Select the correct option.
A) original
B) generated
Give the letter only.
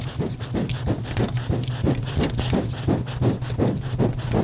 A